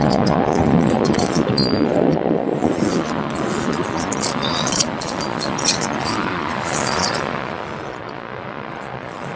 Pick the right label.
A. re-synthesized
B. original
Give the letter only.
A